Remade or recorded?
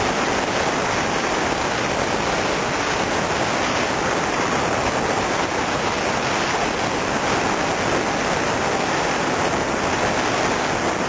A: recorded